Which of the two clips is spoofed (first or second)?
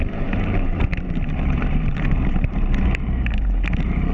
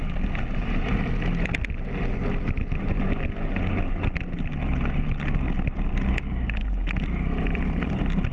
first